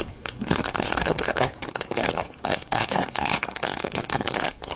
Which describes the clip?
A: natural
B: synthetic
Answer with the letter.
B